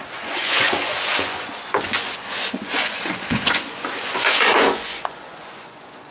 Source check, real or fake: fake